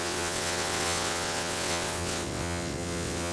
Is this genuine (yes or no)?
no